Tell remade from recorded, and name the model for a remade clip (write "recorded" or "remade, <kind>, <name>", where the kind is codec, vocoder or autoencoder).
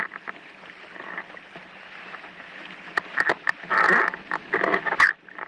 recorded